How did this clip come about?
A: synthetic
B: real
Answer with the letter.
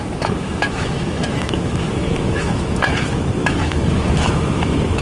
A